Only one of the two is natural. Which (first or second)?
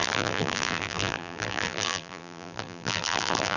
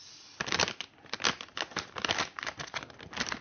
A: second